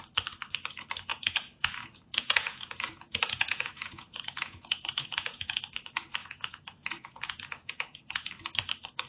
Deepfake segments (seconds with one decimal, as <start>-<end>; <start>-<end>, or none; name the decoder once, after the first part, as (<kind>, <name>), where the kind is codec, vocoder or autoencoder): 1.1-5.6 (vocoder, Vocos); 6.2-8.3